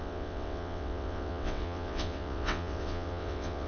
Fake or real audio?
fake